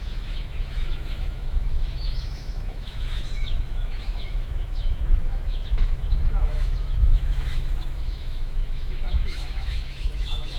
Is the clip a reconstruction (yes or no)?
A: yes